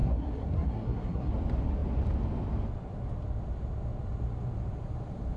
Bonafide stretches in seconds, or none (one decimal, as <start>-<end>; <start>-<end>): 1.3-5.4